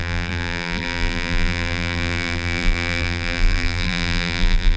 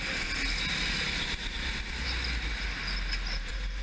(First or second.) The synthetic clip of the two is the first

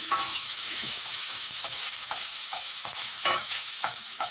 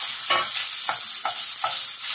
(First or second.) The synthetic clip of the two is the first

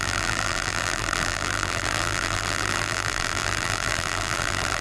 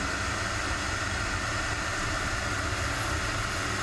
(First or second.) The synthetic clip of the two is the first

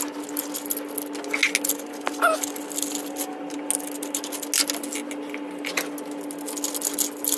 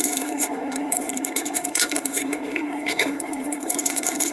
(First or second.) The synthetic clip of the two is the second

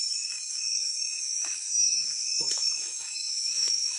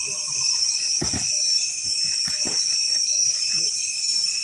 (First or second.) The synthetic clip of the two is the first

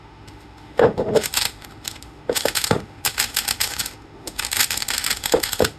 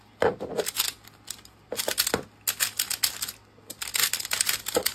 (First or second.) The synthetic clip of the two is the first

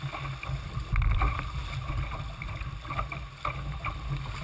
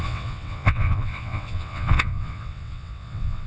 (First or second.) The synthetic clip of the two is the second